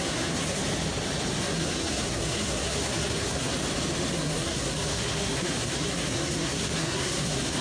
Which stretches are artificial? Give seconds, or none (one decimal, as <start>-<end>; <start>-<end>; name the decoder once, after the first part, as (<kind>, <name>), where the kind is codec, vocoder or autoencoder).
0.0-0.6 (codec, SNAC); 1.4-3.5; 4.1-7.6